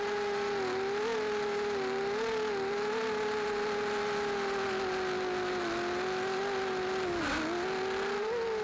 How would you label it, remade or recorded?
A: recorded